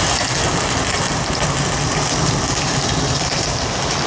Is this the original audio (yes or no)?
yes